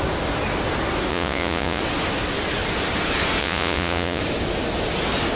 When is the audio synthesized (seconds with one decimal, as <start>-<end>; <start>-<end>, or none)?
1.1-1.8; 3.4-4.2